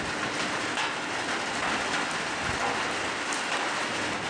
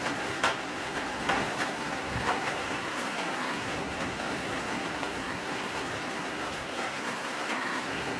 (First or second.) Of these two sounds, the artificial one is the second